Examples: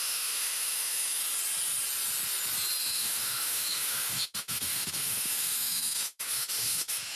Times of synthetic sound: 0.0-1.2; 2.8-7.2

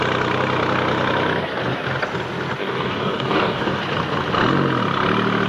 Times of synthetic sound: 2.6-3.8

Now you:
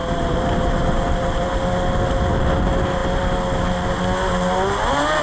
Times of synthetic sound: 0.0-1.5

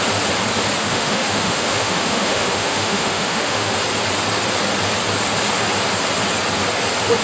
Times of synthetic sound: 0.8-3.7

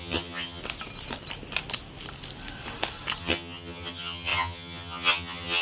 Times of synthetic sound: 0.0-0.6; 3.2-5.6